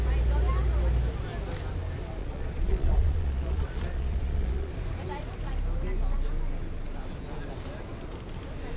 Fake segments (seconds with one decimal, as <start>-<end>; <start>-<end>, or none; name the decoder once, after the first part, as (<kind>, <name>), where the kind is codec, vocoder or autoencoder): 2.2-4.7 (vocoder, Vocos)